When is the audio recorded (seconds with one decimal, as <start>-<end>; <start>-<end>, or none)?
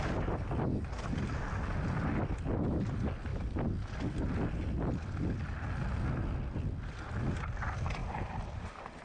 0.0-9.0